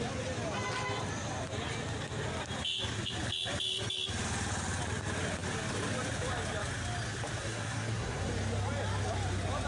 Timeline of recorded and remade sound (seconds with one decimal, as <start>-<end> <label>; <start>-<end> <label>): 0.0-7.4 recorded; 7.4-8.3 remade; 8.3-9.7 recorded